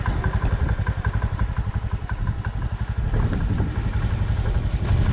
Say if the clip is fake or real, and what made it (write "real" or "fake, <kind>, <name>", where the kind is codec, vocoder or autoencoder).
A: real